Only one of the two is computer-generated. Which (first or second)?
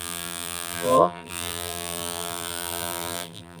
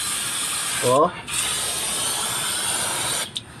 first